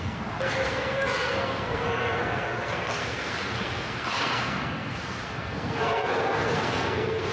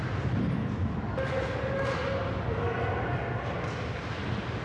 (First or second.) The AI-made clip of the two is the first